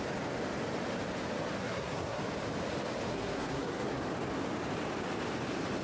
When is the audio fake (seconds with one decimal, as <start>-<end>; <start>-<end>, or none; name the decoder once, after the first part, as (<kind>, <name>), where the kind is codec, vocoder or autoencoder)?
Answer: 1.6-2.2 (codec, SNAC); 3.1-4.0